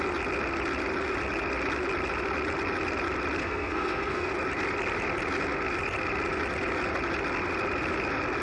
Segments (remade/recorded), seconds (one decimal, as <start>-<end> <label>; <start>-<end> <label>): 0.0-3.4 recorded; 3.4-4.3 remade; 4.3-8.4 recorded